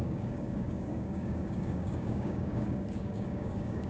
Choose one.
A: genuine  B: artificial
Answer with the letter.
B